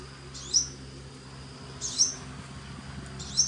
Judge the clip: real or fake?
real